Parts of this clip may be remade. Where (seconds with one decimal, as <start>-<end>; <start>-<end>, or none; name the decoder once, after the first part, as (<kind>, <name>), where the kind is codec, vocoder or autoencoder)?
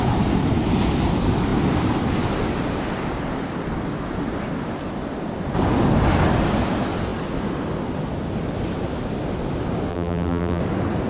9.9-10.6 (vocoder, BigVGAN v2)